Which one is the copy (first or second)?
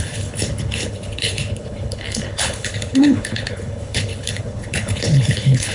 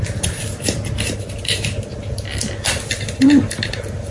first